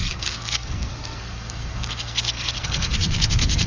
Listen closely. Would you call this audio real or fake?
fake